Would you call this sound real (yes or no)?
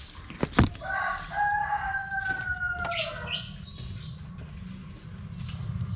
yes